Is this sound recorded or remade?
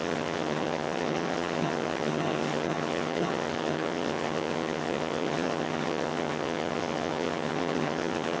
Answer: remade